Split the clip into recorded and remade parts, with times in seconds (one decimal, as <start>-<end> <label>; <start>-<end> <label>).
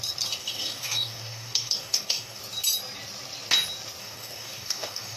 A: 0.0-0.4 recorded; 0.4-2.4 remade; 2.4-4.0 recorded; 4.0-5.2 remade